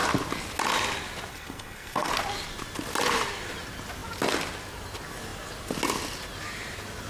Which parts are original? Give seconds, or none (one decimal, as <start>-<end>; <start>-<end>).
0.0-1.3; 2.1-7.1